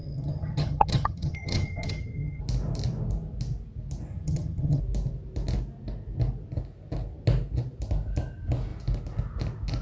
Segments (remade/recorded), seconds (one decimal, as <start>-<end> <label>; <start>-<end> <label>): 0.0-2.4 remade; 2.4-4.1 recorded; 4.1-4.8 remade; 4.8-9.8 recorded